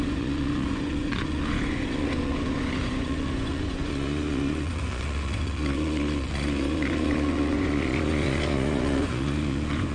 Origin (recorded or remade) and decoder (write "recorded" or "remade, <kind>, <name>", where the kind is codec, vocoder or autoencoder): remade, vocoder, Vocos